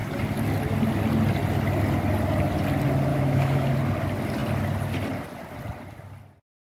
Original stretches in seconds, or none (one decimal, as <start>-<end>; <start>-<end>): 0.0-3.1; 3.7-6.8